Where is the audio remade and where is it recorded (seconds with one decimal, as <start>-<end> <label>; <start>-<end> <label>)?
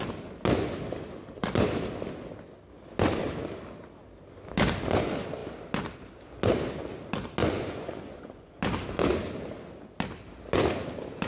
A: 0.0-7.4 recorded; 7.4-8.5 remade; 8.5-11.3 recorded